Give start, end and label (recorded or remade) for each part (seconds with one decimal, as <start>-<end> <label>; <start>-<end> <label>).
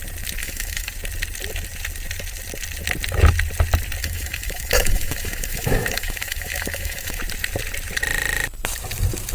0.0-0.4 recorded; 0.4-0.9 remade; 0.9-4.0 recorded; 4.0-7.2 remade; 7.2-9.3 recorded